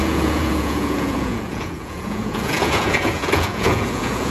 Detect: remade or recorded remade